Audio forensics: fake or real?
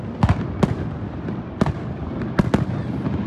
real